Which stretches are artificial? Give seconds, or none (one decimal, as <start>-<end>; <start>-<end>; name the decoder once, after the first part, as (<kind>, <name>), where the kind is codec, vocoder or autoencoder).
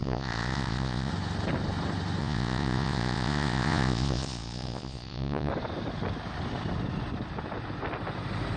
0.0-1.1 (vocoder, Vocos); 2.2-5.5